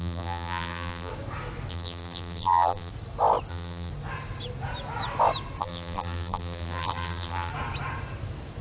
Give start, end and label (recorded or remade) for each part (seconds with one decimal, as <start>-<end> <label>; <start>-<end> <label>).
0.0-1.1 remade; 1.1-1.7 recorded; 1.7-2.9 remade; 2.9-3.5 recorded; 3.5-3.9 remade; 3.9-5.6 recorded; 5.6-7.5 remade; 7.5-8.6 recorded